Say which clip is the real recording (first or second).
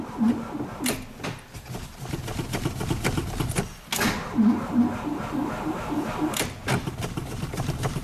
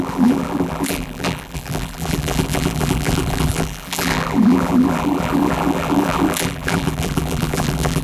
first